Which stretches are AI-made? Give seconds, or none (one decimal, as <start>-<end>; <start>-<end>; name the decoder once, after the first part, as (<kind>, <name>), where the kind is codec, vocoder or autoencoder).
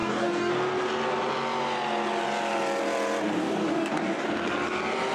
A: 0.0-0.5 (codec, DAC); 3.4-4.3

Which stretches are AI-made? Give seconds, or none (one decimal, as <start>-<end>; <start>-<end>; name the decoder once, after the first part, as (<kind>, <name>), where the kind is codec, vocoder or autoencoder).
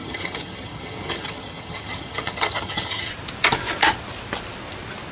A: 0.0-3.1 (vocoder, HiFi-GAN)